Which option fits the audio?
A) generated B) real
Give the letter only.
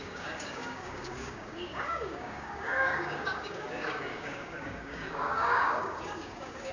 A